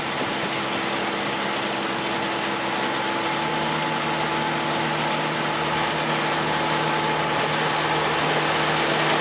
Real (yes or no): yes